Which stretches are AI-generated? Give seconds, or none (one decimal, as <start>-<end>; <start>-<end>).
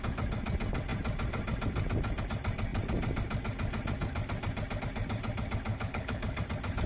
5.7-6.4